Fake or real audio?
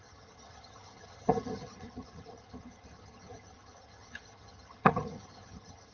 fake